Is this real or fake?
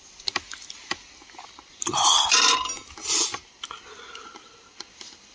real